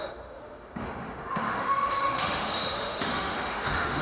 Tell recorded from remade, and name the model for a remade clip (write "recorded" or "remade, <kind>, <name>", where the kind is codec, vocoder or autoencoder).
remade, autoencoder, DAC-VAE